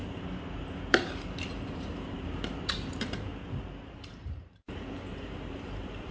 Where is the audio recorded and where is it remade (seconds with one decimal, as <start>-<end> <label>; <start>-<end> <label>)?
0.0-3.3 remade; 3.3-3.9 recorded; 3.9-6.1 remade